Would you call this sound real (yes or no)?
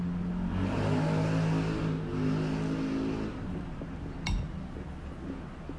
yes